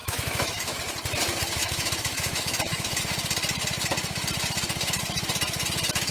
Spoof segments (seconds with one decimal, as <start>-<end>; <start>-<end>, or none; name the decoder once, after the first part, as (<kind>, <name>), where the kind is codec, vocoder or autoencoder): 0.0-0.8 (autoencoder, DAC-VAE); 1.6-3.0